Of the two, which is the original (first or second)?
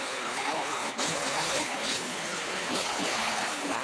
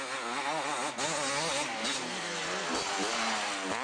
second